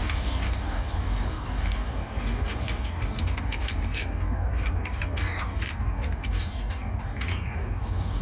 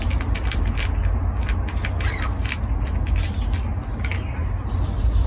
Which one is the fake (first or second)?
first